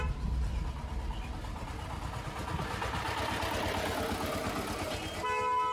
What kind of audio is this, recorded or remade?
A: recorded